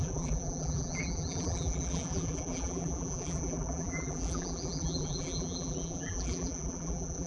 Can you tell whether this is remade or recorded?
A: remade